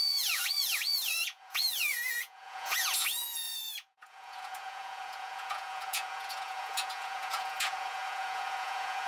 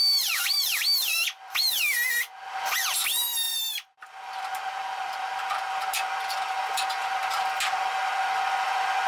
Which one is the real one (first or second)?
second